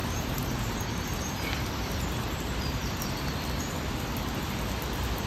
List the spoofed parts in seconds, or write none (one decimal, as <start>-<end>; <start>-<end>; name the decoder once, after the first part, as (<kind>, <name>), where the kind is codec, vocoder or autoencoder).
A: 0.0-3.2 (vocoder, BigVGAN v2)

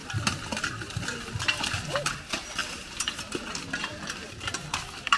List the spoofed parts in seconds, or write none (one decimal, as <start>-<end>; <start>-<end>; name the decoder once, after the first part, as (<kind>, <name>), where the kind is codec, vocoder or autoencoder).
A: 0.0-2.1 (vocoder, BigVGAN v2); 2.6-5.2

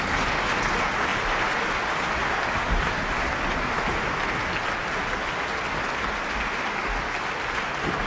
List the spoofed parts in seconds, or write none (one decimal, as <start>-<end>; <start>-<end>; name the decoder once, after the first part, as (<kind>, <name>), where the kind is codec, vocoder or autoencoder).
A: 1.1-1.7 (vocoder, BigVGAN v2)

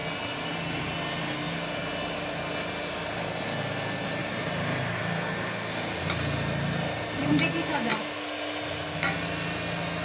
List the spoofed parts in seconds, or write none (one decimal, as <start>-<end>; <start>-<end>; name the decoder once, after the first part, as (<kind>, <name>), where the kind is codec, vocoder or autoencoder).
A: 4.2-7.3 (vocoder, BigVGAN v2)

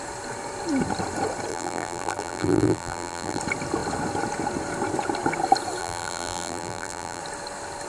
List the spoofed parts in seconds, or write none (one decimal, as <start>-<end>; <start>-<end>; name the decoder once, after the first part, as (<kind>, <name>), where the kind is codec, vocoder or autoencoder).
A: 1.5-3.4 (vocoder, BigVGAN v2); 5.8-7.2

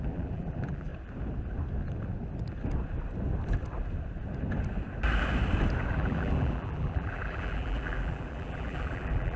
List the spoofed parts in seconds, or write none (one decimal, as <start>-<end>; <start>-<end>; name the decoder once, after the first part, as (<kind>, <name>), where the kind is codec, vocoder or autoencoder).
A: 0.0-0.9 (vocoder, BigVGAN v2); 5.9-9.4

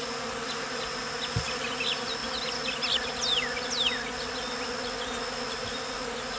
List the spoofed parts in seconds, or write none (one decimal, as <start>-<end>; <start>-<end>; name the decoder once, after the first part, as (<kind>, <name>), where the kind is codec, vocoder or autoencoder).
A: none

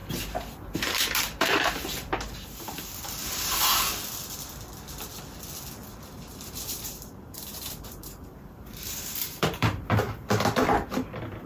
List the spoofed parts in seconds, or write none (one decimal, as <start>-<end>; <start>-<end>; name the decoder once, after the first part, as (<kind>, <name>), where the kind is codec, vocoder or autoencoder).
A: 0.0-3.9 (vocoder, BigVGAN v2); 5.9-9.8